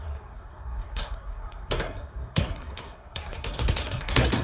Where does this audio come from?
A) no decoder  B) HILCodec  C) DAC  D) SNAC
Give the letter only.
D